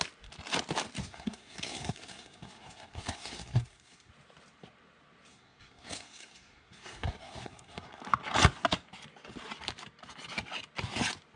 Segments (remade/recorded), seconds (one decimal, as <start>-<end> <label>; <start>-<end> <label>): 0.0-1.0 recorded; 1.0-4.1 remade; 4.1-5.3 recorded; 5.3-8.0 remade; 8.0-11.4 recorded